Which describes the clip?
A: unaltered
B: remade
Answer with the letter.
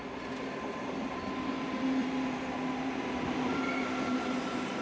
A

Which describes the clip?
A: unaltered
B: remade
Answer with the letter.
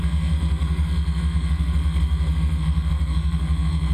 B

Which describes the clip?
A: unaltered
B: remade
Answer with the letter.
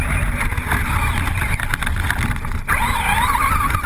A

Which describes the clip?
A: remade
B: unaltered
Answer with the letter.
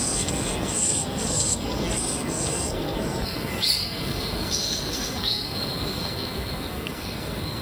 A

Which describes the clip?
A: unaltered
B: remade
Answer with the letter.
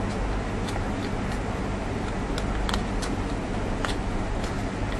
A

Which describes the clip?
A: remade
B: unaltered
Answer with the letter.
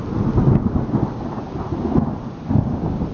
B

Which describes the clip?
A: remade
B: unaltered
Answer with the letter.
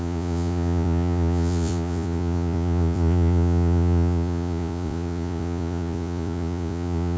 A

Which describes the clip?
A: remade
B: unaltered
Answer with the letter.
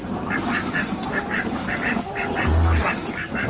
B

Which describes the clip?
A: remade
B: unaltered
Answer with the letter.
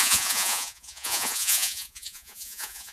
A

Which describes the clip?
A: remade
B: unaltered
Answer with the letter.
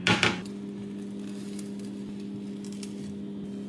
B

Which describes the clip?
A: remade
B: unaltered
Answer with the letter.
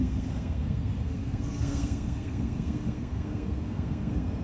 A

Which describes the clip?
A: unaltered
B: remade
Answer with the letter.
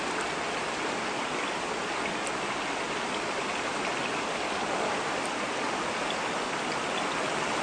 A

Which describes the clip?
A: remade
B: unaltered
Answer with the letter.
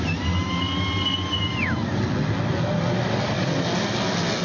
B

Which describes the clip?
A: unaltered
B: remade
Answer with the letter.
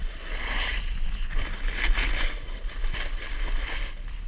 A